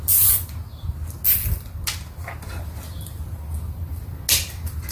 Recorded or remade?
recorded